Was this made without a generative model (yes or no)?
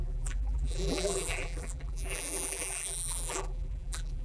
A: no